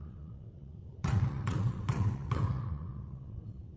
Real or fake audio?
fake